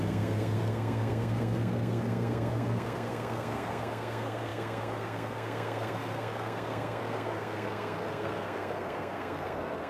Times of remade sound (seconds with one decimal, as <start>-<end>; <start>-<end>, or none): 0.0-9.9